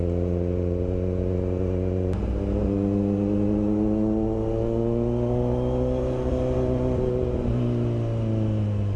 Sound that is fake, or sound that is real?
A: real